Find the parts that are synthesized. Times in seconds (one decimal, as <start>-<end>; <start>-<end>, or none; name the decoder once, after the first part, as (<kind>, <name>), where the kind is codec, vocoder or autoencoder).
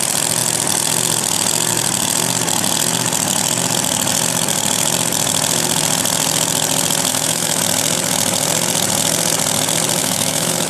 7.1-7.6 (autoencoder, DAC-VAE); 10.0-10.7